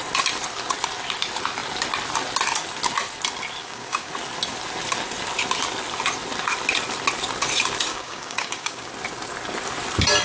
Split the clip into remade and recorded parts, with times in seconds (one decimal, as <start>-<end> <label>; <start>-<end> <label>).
0.0-3.6 recorded; 3.6-4.1 remade; 4.1-7.9 recorded; 7.9-8.9 remade; 8.9-10.2 recorded